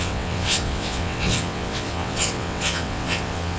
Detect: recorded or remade remade